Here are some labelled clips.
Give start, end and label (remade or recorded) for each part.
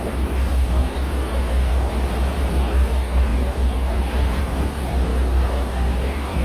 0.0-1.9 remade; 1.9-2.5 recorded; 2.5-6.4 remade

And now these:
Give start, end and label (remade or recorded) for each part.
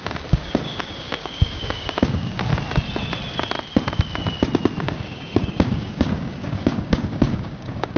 0.0-2.5 remade; 2.5-4.8 recorded; 4.8-8.0 remade